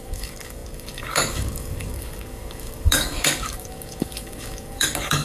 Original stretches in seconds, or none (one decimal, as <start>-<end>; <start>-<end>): none